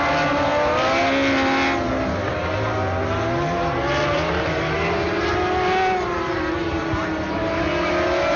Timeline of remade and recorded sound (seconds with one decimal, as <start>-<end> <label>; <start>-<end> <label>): 0.0-8.4 recorded